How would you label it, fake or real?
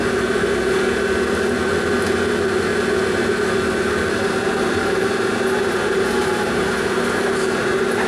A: real